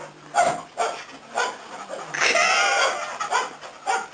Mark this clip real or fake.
real